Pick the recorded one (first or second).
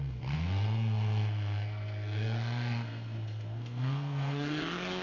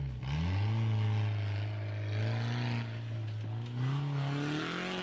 second